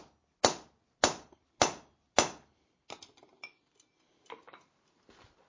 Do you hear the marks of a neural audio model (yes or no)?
no